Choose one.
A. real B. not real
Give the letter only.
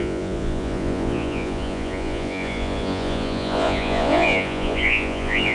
B